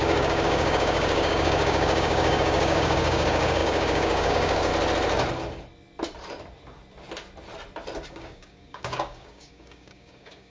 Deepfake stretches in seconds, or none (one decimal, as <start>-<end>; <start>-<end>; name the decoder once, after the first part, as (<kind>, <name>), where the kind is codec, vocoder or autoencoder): 0.0-4.7 (codec, DAC); 8.1-10.5